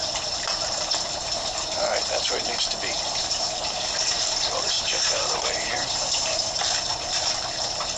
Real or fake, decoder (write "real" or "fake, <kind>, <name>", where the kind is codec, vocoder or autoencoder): fake, vocoder, BigVGAN v2